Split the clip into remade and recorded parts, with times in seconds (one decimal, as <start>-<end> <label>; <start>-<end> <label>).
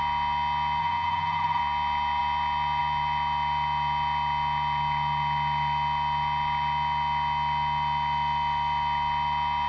0.0-0.8 recorded; 0.8-1.6 remade; 1.6-9.7 recorded